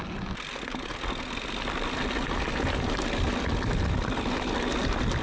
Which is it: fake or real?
real